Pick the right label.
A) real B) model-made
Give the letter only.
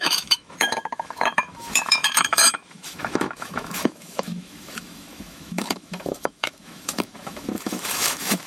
B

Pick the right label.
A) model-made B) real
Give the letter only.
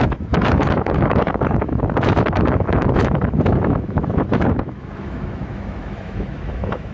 A